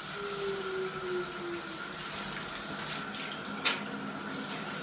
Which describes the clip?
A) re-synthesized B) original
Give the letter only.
B